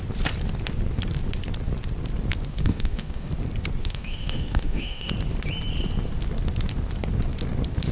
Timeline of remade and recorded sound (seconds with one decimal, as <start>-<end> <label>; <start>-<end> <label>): 0.0-2.5 recorded; 2.5-3.3 remade; 3.3-3.8 recorded; 3.8-5.1 remade; 5.1-7.9 recorded